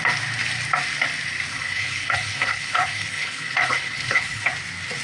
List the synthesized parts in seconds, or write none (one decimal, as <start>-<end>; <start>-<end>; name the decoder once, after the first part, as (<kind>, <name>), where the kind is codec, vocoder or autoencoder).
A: 1.5-4.5 (codec, HILCodec)